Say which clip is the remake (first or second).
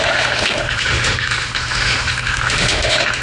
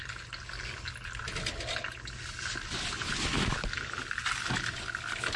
first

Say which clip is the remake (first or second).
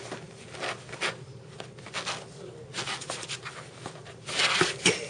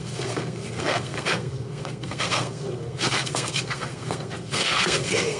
second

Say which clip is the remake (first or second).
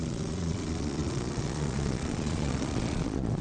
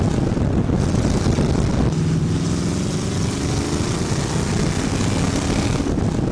first